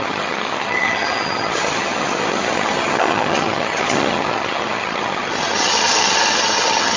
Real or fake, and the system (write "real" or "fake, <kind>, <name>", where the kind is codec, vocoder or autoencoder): fake, vocoder, HiFi-GAN